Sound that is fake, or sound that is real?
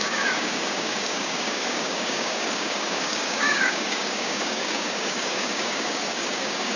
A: fake